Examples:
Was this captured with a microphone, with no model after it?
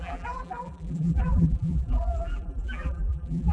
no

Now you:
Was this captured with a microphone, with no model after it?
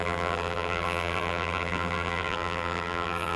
no